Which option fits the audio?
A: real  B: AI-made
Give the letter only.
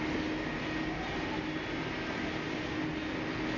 A